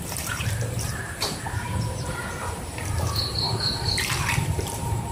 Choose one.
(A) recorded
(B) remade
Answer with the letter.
B